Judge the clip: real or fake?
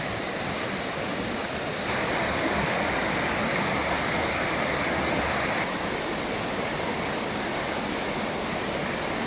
real